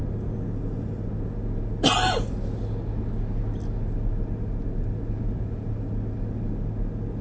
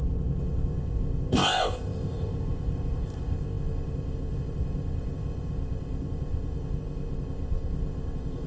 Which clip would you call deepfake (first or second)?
second